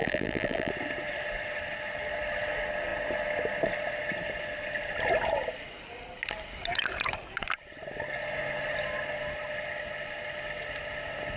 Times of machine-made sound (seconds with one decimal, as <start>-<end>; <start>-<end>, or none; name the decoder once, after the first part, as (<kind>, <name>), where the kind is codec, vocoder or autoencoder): 0.0-0.7 (vocoder, BigVGAN v2)